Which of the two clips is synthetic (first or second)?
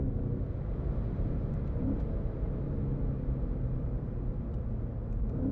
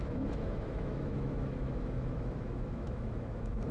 second